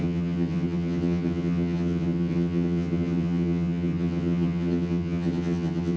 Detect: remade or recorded remade